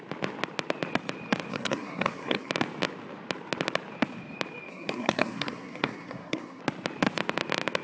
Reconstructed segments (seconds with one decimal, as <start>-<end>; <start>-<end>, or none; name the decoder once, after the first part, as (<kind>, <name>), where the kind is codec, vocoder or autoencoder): 1.5-2.5 (codec, SNAC); 4.7-6.6